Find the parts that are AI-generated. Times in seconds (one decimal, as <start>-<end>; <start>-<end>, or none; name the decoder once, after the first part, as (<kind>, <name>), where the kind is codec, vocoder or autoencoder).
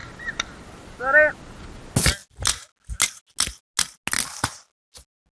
none